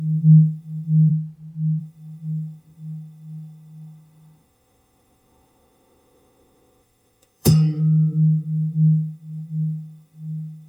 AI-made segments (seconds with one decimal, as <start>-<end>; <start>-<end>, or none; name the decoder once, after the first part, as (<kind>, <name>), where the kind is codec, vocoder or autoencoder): 0.0-1.1 (autoencoder, DAC-VAE); 1.8-10.7